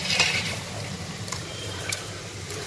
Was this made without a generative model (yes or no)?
no